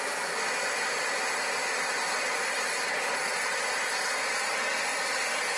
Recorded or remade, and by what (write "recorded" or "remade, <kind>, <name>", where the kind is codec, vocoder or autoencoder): recorded